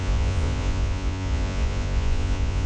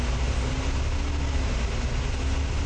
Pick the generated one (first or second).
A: first